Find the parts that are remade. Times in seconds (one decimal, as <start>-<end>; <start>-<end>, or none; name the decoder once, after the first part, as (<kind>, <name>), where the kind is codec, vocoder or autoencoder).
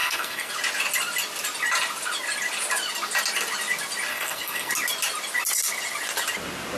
0.0-0.5 (codec, SNAC); 4.1-4.7